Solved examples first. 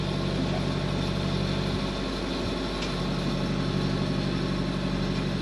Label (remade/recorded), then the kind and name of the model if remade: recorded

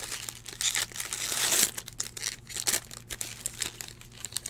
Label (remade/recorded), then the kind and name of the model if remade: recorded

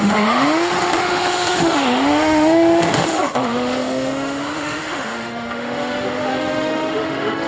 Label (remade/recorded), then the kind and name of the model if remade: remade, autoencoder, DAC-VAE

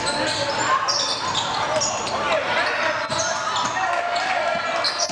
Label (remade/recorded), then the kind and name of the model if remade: recorded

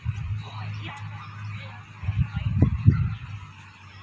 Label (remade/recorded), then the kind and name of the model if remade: recorded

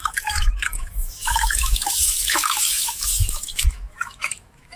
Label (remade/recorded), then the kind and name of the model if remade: remade, autoencoder, DAC-VAE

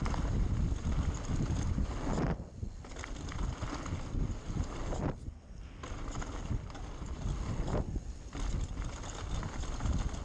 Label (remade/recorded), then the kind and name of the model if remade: recorded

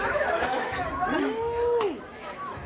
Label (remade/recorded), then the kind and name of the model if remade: remade, autoencoder, DAC-VAE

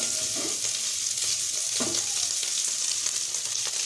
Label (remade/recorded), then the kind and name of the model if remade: recorded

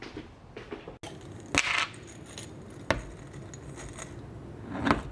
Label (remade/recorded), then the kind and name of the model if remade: recorded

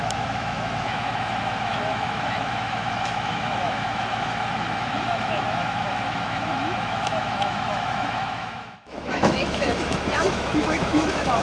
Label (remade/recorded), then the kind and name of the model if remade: remade, autoencoder, DAC-VAE